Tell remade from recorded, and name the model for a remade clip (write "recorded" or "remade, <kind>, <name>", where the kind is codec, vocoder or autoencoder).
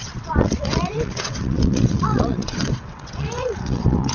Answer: remade, vocoder, WaveNeXt